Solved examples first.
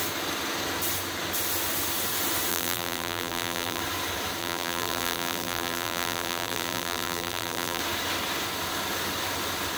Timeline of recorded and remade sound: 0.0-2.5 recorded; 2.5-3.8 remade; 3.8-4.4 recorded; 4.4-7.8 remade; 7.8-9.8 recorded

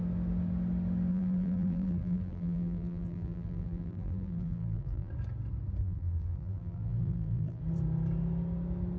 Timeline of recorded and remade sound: 0.0-1.1 recorded; 1.1-5.1 remade; 5.1-5.8 recorded; 5.8-7.6 remade; 7.6-9.0 recorded

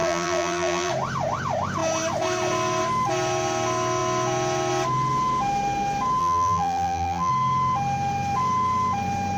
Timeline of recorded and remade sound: 0.0-0.9 remade; 0.9-6.2 recorded; 6.2-7.3 remade; 7.3-9.4 recorded

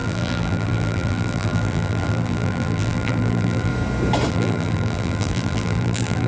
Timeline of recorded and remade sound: 0.0-3.7 remade; 3.7-4.3 recorded; 4.3-6.3 remade

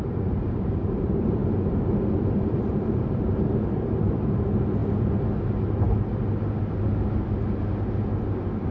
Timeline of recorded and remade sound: 0.0-1.4 remade; 1.4-2.5 recorded; 2.5-4.8 remade; 4.8-8.7 recorded

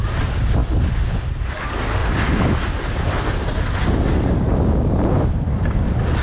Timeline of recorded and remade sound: 0.0-0.6 remade; 0.6-1.3 recorded; 1.3-2.0 remade; 2.0-5.7 recorded; 5.7-6.2 remade

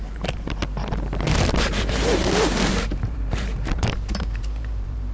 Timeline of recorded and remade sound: 0.0-0.6 remade; 0.6-1.2 recorded; 1.2-5.1 remade

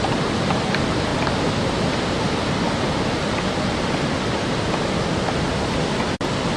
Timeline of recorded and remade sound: 0.0-6.6 recorded